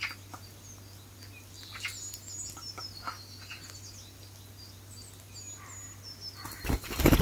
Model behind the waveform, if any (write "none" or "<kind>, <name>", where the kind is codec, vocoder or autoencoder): none